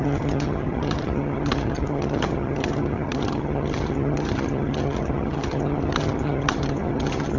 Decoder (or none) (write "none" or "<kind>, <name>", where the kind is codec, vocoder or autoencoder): vocoder, HiFi-GAN